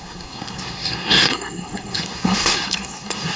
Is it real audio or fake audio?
fake